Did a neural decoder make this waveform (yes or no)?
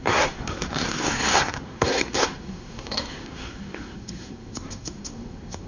yes